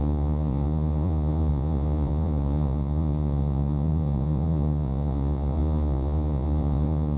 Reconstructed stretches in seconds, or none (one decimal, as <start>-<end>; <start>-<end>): 0.0-7.2